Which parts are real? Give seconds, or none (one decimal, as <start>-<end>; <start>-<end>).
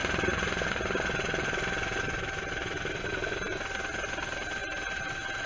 0.0-5.5